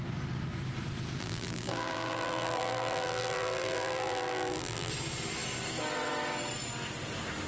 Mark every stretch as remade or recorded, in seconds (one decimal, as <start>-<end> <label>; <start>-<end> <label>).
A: 0.0-1.2 recorded; 1.2-4.9 remade; 4.9-7.5 recorded